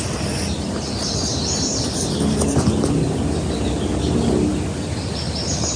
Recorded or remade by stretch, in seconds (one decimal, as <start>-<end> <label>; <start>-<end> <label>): 0.0-5.8 recorded